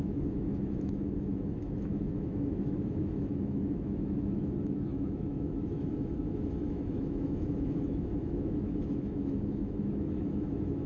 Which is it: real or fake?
fake